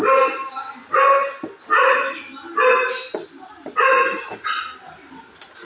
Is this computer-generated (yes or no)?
no